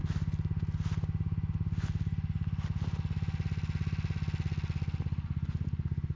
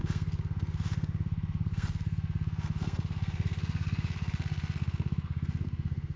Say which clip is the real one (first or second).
first